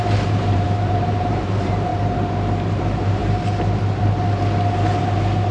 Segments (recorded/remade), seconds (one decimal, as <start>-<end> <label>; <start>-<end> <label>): 0.0-1.9 remade; 1.9-2.7 recorded; 2.7-3.2 remade; 3.2-5.5 recorded